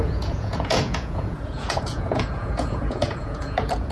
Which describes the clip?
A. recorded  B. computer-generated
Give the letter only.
B